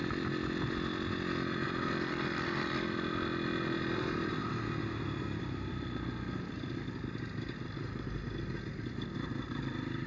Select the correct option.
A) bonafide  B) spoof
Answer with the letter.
A